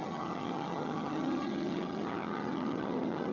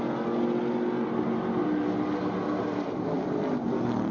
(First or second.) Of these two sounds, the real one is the second